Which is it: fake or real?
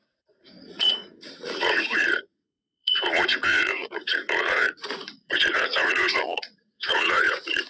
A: fake